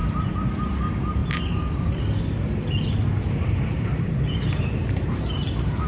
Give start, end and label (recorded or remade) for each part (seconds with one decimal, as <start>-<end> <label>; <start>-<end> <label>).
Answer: 0.0-1.2 remade; 1.2-3.4 recorded; 3.4-5.9 remade